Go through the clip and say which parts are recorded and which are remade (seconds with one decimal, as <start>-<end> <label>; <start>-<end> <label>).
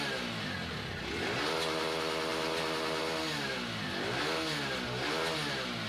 0.0-5.9 recorded